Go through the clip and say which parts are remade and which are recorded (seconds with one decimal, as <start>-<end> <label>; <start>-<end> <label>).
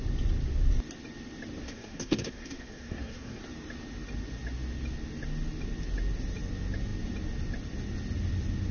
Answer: 0.0-1.6 recorded; 1.6-3.4 remade; 3.4-8.7 recorded